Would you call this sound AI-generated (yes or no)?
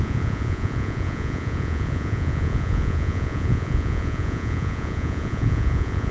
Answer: yes